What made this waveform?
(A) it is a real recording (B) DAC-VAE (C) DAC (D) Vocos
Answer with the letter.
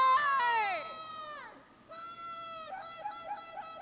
A